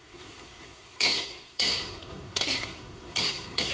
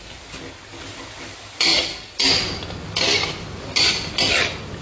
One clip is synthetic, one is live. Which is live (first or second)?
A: second